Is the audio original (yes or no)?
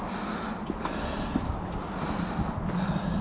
yes